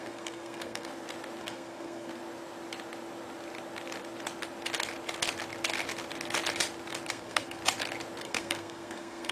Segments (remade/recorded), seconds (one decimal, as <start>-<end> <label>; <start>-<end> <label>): 0.0-0.9 remade; 0.9-1.4 recorded; 1.4-2.1 remade; 2.1-7.1 recorded; 7.1-7.6 remade; 7.6-8.2 recorded; 8.2-9.3 remade